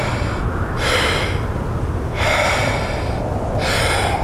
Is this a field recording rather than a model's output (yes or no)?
yes